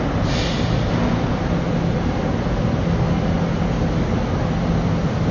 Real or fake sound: real